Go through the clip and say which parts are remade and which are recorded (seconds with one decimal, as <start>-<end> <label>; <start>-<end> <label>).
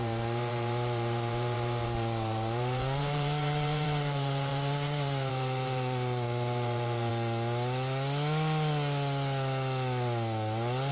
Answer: 0.0-7.1 remade; 7.1-10.9 recorded